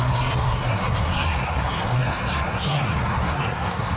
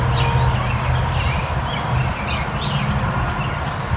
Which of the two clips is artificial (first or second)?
first